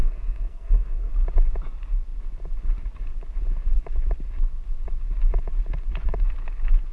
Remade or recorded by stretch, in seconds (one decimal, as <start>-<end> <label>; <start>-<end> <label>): 0.0-1.1 remade; 1.1-6.9 recorded